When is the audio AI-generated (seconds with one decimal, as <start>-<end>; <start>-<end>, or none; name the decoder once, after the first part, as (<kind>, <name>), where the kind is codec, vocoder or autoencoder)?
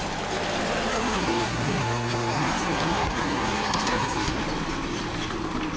0.9-4.4 (codec, SNAC)